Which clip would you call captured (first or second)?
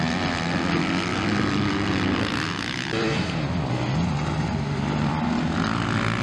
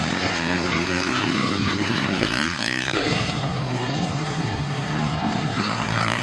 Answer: first